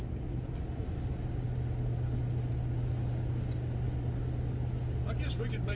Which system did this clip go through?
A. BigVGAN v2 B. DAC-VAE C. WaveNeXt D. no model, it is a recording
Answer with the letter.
D